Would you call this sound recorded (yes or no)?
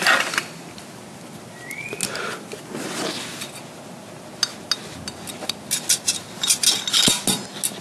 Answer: yes